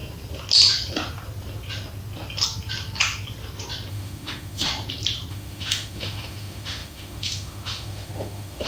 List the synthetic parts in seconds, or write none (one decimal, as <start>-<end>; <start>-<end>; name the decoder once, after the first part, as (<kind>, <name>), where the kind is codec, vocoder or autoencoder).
3.9-4.7 (autoencoder, DAC-VAE); 5.3-8.7

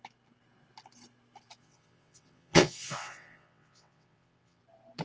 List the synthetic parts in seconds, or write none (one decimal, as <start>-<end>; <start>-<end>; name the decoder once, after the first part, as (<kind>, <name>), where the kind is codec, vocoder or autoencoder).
1.6-4.6 (vocoder, WaveNeXt)

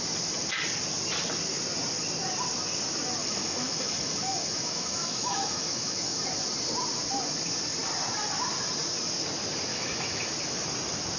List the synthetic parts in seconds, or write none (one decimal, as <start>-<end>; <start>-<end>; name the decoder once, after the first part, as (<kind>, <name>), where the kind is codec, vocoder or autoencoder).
3.2-6.2 (autoencoder, DAC-VAE); 9.7-10.3

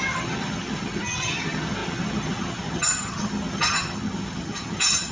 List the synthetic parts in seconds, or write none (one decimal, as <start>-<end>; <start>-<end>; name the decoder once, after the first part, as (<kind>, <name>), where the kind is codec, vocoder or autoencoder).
0.0-5.1 (vocoder, HiFi-GAN)

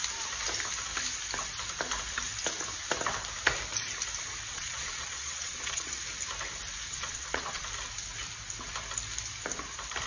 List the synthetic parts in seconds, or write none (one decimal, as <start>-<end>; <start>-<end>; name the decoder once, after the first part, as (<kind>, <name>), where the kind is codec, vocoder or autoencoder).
4.5-6.0 (vocoder, Vocos); 6.9-7.6

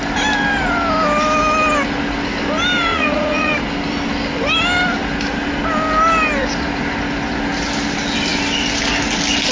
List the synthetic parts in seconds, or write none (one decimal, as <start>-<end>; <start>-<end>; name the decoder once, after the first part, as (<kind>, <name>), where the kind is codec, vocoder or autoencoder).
2.9-3.5 (vocoder, Vocos)